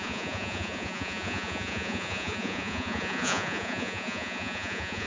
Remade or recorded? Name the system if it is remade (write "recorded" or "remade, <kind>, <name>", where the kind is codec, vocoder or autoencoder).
remade, vocoder, Vocos